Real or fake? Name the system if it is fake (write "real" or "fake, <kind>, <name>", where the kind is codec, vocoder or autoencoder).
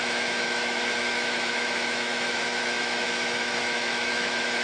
fake, autoencoder, DAC-VAE